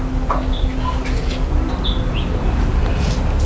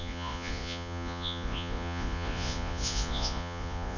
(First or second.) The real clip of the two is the first